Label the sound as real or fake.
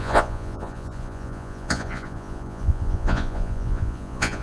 fake